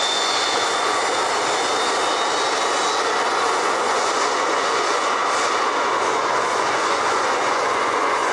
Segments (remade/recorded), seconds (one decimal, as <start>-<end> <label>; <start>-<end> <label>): 0.0-1.0 remade; 1.0-3.3 recorded; 3.3-5.2 remade; 5.2-6.0 recorded; 6.0-8.3 remade